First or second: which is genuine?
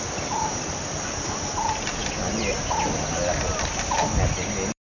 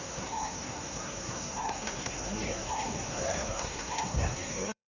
first